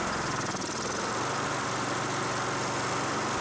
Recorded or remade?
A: recorded